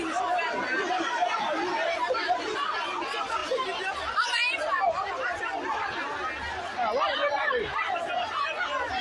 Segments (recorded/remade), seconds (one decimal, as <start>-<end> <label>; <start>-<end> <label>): 0.0-9.0 recorded